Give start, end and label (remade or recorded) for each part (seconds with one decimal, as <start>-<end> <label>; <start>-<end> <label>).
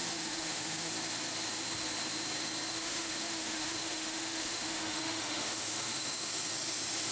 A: 0.0-0.9 remade; 0.9-2.7 recorded; 2.7-6.3 remade; 6.3-7.1 recorded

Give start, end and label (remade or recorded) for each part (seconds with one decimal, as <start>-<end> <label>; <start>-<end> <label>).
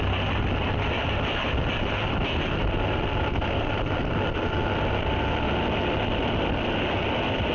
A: 0.0-2.6 recorded; 2.6-4.8 remade; 4.8-7.5 recorded